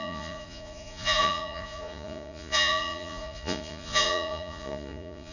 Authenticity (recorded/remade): remade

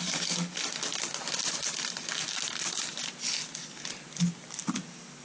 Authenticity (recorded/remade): recorded